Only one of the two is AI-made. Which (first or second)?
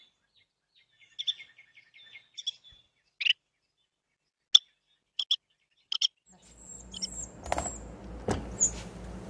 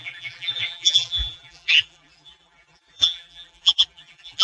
second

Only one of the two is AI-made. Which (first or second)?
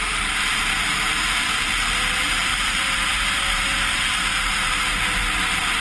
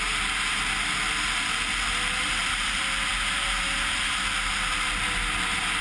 first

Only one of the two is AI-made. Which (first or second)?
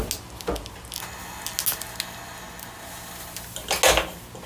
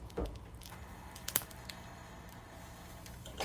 second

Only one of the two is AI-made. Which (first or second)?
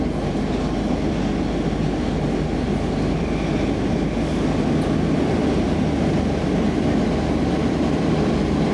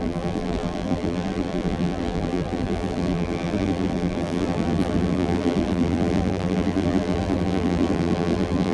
second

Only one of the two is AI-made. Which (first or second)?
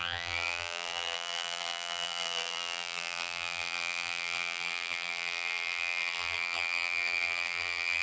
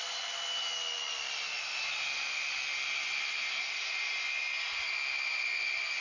first